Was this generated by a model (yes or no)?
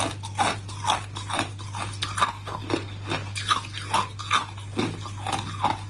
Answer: no